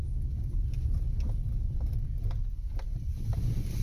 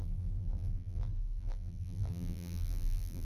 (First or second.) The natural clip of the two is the first